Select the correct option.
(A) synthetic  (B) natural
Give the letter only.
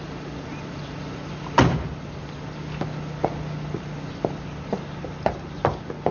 B